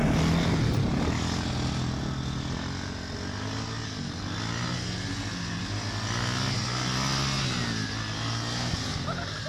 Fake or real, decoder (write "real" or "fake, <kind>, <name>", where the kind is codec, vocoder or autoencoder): real